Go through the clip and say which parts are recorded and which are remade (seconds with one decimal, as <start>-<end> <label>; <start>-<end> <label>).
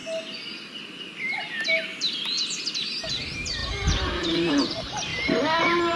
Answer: 0.0-3.1 recorded; 3.1-5.1 remade; 5.1-5.6 recorded; 5.6-6.0 remade